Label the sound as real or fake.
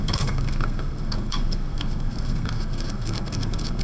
fake